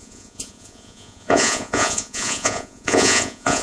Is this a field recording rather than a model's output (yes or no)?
no